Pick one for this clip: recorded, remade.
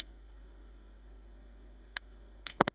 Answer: remade